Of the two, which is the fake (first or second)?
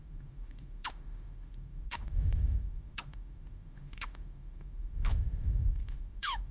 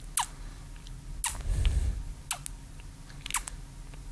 first